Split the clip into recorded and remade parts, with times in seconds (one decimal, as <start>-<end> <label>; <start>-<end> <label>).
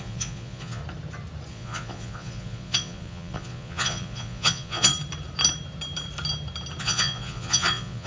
0.0-0.8 remade; 0.8-1.5 recorded; 1.5-4.9 remade; 4.9-6.8 recorded; 6.8-8.1 remade